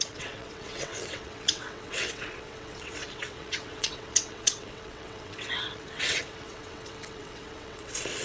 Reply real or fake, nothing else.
fake